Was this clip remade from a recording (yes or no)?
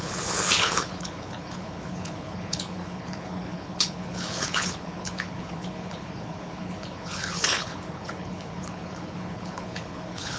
yes